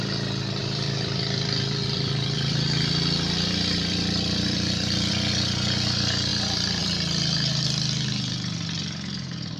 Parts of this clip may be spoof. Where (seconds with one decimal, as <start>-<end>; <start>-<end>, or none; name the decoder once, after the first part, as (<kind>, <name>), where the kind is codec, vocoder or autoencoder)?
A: 0.6-5.1 (vocoder, BigVGAN v2)